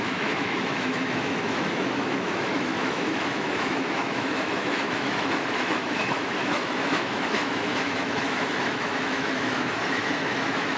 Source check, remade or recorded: remade